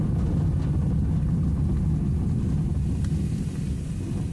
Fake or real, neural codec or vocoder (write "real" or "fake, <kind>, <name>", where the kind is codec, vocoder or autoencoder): real